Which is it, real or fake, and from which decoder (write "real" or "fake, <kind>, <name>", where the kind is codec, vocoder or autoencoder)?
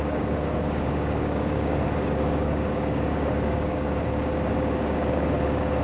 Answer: fake, codec, DAC